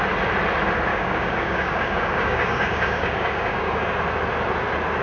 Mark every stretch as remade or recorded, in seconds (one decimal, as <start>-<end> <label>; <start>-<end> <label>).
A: 0.0-0.9 recorded; 0.9-3.9 remade; 3.9-5.0 recorded